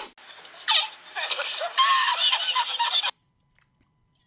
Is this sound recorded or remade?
recorded